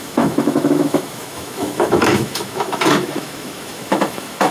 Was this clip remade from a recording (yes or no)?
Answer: yes